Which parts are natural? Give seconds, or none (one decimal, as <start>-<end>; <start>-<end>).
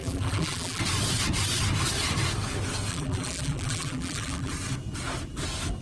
0.8-2.9; 4.5-5.8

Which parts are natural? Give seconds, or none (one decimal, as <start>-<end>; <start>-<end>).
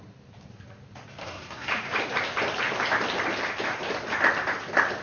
0.0-1.2; 1.7-5.0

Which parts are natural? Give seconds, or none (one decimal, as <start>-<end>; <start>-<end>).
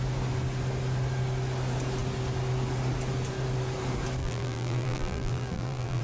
0.0-4.2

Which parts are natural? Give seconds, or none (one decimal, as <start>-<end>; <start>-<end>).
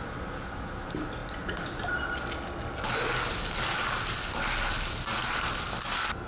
0.0-1.2; 1.8-6.3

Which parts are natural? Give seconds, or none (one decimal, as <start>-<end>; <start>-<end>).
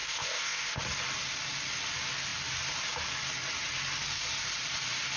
0.8-5.2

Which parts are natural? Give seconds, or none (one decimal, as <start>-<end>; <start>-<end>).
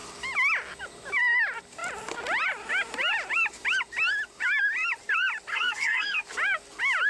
0.0-5.5; 6.2-7.1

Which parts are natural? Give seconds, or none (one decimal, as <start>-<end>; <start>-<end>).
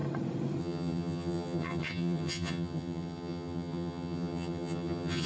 0.0-0.6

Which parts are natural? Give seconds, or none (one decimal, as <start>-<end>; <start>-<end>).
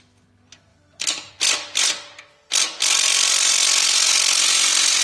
0.0-0.7; 1.3-5.0